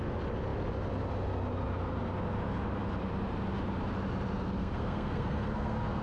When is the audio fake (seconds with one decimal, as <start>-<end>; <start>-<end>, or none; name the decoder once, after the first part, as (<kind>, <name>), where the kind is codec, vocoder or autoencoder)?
4.6-6.0 (codec, SNAC)